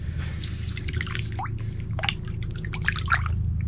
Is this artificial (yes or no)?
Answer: no